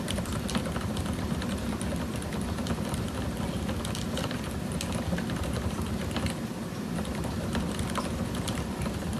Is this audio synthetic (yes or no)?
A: no